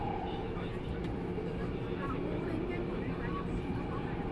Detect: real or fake fake